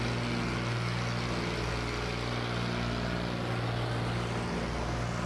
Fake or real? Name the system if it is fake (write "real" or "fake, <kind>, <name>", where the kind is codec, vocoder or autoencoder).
real